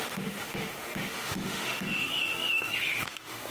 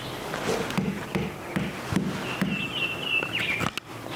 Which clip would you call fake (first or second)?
first